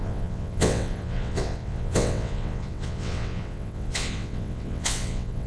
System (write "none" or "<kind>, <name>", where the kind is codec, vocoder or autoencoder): vocoder, WaveNeXt